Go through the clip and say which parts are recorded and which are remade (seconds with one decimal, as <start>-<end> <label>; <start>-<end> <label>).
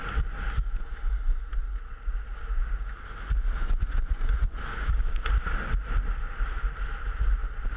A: 0.0-3.6 recorded; 3.6-4.6 remade; 4.6-7.8 recorded